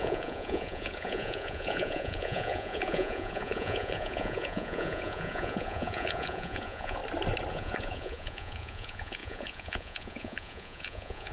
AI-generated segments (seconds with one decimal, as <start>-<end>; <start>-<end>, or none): 0.0-7.0; 7.5-11.3